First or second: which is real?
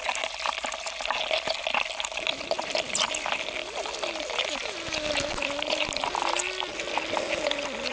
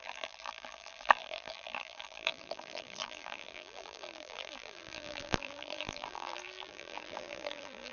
first